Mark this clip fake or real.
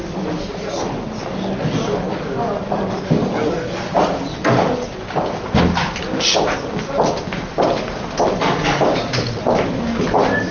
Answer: real